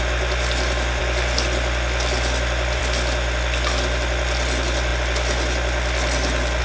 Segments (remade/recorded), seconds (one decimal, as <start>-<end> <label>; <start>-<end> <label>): 0.0-6.6 recorded